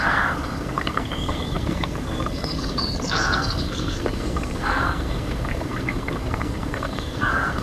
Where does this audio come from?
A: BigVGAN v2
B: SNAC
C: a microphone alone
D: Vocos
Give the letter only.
B